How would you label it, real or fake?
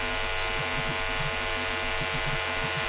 real